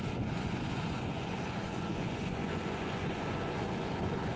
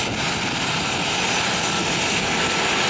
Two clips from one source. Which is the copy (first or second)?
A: first